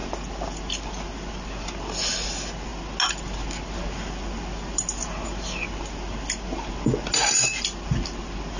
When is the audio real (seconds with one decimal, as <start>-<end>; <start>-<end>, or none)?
0.0-8.6